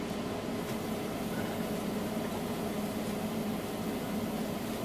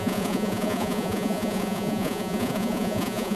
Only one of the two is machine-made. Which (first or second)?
second